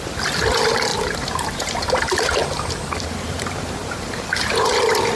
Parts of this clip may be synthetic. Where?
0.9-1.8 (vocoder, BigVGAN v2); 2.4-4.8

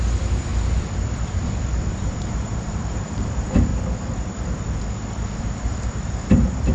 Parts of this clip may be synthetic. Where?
0.0-0.5 (vocoder, BigVGAN v2); 1.9-3.7; 5.4-6.7

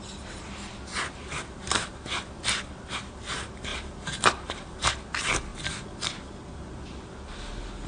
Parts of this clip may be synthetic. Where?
0.9-2.4 (vocoder, BigVGAN v2); 3.7-4.9

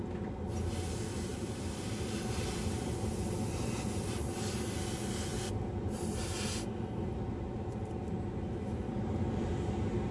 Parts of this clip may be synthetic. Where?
1.3-2.6 (vocoder, BigVGAN v2); 5.3-6.3